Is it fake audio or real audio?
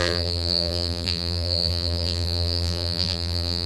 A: fake